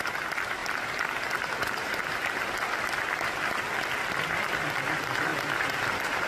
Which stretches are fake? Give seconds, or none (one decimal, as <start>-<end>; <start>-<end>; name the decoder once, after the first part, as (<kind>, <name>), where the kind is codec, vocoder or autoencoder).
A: 0.6-4.4 (vocoder, BigVGAN v2)